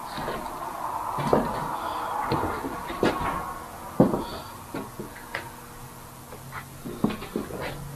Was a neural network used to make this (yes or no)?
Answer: no